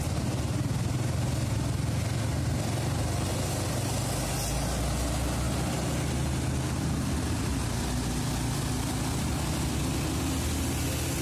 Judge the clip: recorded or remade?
recorded